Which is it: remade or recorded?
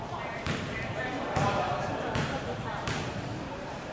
remade